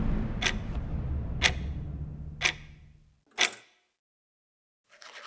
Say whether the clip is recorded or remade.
recorded